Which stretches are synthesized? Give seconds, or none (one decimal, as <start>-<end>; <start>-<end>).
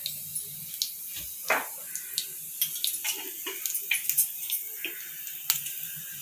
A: none